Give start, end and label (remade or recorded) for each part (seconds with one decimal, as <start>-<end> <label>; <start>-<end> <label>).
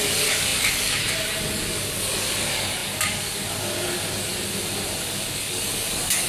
0.0-4.3 remade; 4.3-5.0 recorded; 5.0-6.3 remade